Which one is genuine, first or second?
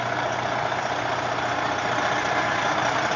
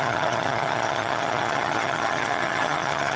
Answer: first